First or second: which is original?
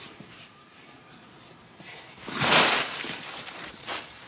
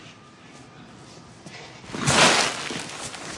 second